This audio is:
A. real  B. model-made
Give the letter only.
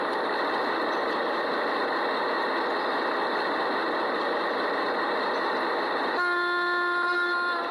A